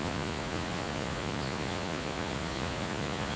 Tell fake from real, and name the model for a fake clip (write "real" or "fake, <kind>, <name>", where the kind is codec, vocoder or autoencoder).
fake, vocoder, Vocos